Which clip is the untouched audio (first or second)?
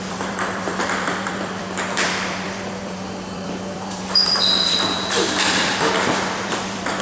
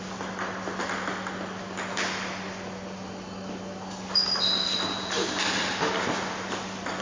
second